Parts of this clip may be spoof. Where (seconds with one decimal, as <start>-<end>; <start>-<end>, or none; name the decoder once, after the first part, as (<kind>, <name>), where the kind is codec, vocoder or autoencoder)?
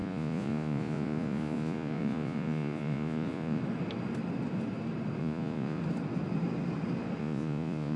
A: 0.0-3.6 (vocoder, Vocos); 5.2-5.8; 7.2-8.0